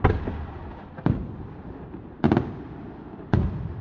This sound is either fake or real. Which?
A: real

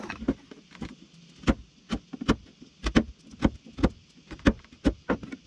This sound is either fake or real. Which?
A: real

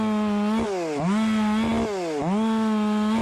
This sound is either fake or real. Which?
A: real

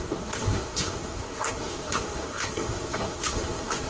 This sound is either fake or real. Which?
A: fake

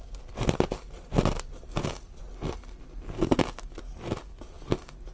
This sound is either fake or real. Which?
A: real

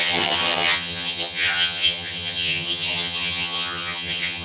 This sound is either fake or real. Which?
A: fake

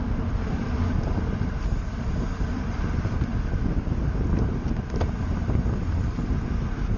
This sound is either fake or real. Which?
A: real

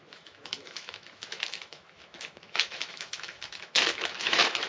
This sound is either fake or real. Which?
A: fake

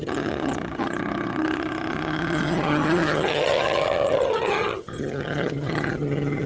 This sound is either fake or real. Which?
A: fake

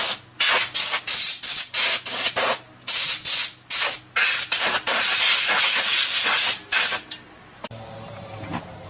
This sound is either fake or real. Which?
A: real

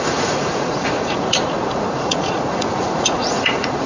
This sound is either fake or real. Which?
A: fake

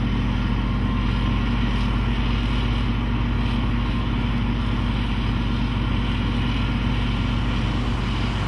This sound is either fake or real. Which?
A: real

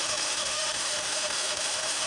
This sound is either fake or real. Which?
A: fake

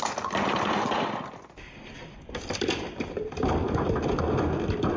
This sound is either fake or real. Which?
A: real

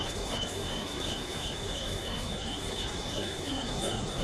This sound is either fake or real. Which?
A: fake